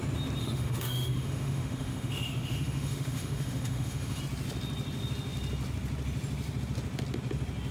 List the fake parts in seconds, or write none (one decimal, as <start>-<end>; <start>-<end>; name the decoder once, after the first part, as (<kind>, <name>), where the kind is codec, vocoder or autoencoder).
0.4-4.2 (autoencoder, DAC-VAE)